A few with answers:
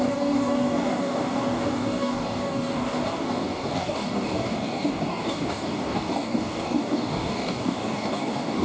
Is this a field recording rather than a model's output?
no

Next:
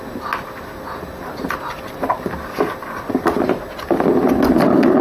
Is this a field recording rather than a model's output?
yes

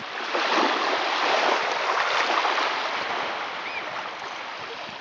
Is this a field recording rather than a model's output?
yes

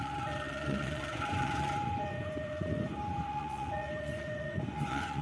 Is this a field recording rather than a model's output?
no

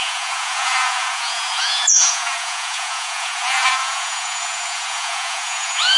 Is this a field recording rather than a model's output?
no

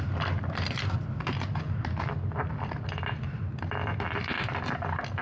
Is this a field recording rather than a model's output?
no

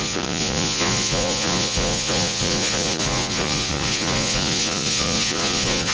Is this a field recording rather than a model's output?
no